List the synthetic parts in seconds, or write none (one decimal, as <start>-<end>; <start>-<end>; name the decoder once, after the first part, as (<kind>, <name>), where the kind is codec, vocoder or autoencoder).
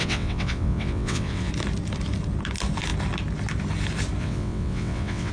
0.0-1.5 (vocoder, WaveNeXt); 4.2-5.3